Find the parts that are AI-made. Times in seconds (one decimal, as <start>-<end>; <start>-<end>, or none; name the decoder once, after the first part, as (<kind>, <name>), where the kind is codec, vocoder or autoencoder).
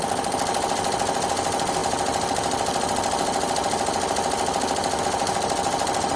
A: none